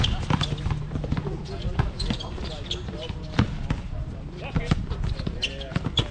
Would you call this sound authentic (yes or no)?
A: yes